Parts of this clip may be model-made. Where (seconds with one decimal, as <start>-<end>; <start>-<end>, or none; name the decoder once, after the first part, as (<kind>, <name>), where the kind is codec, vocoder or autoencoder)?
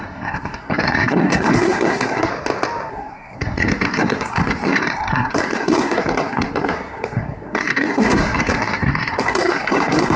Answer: 0.0-2.3 (codec, SNAC); 2.9-10.2